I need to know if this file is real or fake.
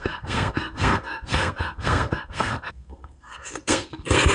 fake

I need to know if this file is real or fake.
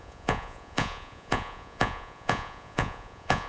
fake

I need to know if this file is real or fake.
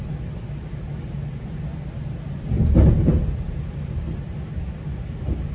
real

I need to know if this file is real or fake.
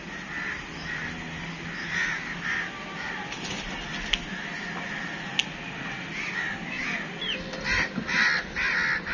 real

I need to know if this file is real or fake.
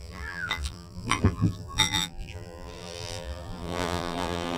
fake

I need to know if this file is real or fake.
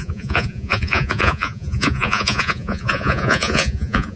fake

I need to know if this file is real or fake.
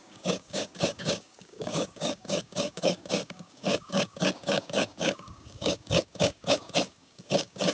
fake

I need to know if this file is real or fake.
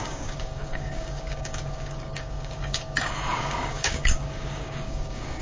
fake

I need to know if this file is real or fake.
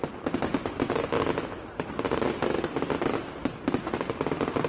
real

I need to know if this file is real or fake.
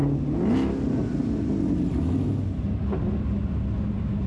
real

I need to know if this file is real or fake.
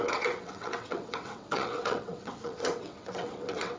fake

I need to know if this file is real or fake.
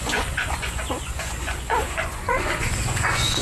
fake